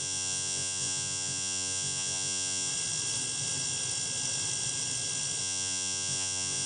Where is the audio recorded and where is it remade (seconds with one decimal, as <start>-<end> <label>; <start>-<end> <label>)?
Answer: 0.0-2.7 remade; 2.7-5.4 recorded; 5.4-6.7 remade